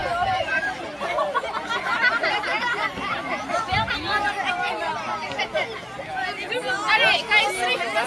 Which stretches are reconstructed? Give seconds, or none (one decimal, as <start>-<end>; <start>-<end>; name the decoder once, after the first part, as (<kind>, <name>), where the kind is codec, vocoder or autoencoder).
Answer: none